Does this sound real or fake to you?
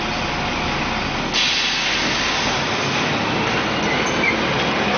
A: real